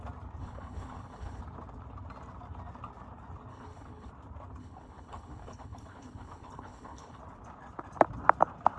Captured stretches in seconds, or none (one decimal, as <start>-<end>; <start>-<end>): 0.0-0.4; 1.4-3.5; 4.1-4.6; 7.2-8.8